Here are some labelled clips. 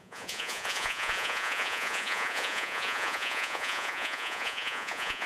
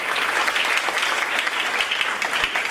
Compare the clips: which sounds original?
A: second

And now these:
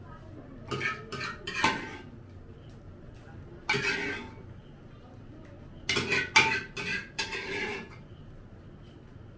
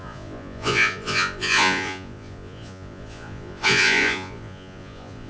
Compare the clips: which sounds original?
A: first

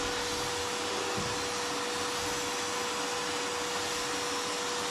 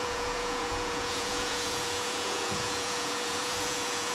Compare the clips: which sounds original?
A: first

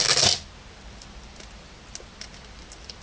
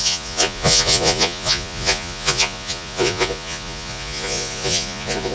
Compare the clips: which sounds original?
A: first